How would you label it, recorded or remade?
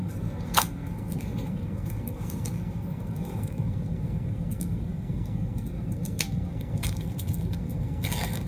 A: remade